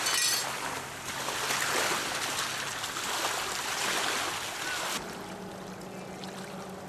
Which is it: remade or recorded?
recorded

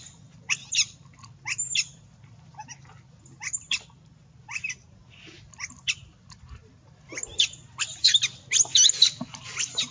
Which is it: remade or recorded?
recorded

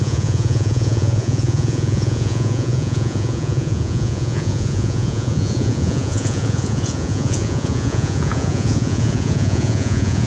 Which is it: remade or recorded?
remade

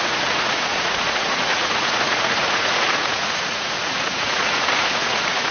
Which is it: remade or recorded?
remade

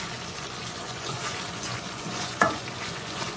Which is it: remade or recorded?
remade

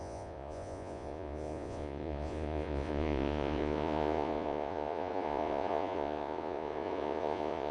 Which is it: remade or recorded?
remade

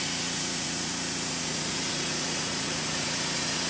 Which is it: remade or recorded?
remade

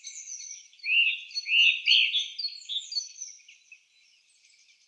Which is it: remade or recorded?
recorded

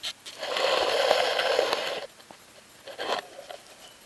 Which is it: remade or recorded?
recorded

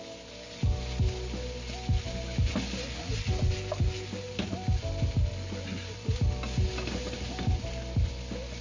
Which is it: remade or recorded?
recorded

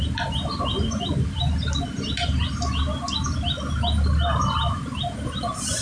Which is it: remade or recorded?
recorded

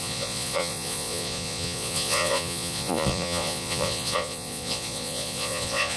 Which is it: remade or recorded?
remade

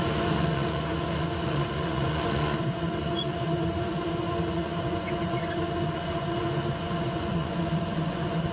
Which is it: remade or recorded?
remade